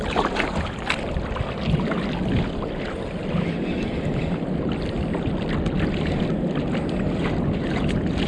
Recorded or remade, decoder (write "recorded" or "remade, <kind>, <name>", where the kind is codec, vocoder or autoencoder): recorded